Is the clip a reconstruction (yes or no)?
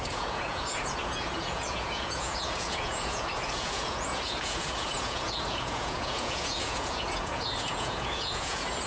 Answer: yes